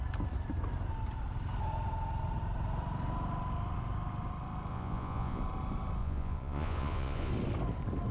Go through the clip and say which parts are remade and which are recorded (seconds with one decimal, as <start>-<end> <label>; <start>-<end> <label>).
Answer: 0.0-4.7 recorded; 4.7-5.4 remade; 5.4-6.0 recorded; 6.0-7.3 remade; 7.3-8.1 recorded